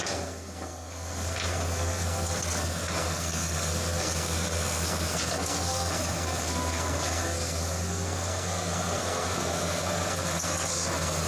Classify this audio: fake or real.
fake